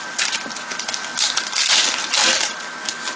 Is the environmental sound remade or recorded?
recorded